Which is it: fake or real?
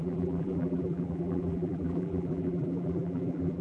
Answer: fake